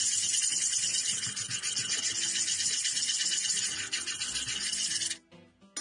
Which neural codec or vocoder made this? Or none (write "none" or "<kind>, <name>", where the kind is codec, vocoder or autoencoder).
none